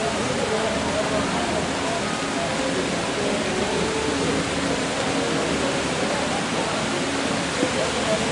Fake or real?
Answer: real